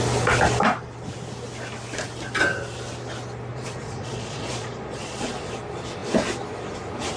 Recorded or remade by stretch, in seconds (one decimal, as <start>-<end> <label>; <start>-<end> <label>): 0.0-3.5 recorded; 3.5-5.5 remade; 5.5-7.2 recorded